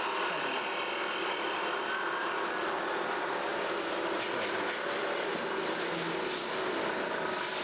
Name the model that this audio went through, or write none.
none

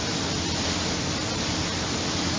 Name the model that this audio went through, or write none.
none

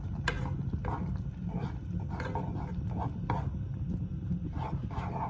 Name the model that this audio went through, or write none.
none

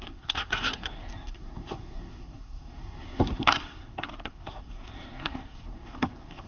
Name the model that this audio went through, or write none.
codec, SNAC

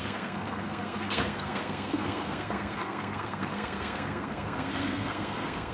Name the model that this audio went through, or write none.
codec, SNAC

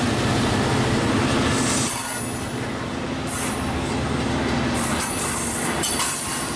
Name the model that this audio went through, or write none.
none